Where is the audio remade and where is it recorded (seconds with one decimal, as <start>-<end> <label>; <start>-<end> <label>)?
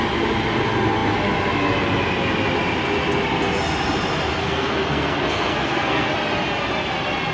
0.0-4.4 recorded; 4.4-6.1 remade; 6.1-7.3 recorded